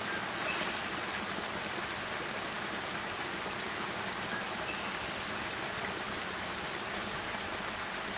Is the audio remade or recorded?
recorded